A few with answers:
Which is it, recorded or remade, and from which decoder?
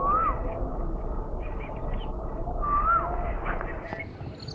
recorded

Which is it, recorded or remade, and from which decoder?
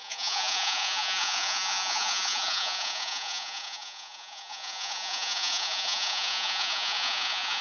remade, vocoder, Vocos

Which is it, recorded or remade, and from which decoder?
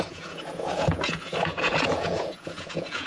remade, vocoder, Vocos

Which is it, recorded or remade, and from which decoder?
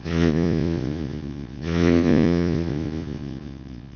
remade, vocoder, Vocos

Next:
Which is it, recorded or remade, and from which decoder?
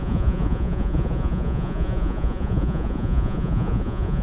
remade, vocoder, Vocos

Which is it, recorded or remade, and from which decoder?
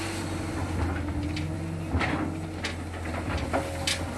recorded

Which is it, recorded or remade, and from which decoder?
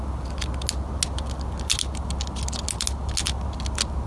recorded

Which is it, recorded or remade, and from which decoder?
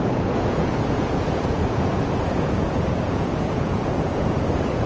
remade, vocoder, Vocos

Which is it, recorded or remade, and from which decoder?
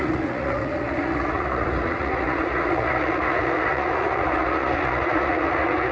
remade, vocoder, Vocos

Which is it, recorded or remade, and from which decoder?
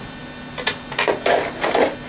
recorded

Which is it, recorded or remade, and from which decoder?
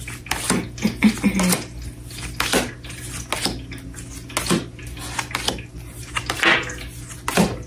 recorded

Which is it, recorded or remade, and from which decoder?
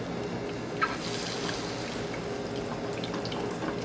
recorded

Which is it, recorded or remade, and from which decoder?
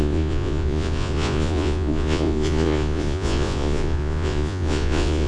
remade, vocoder, Vocos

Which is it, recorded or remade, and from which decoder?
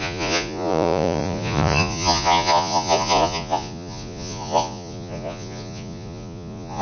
remade, vocoder, Vocos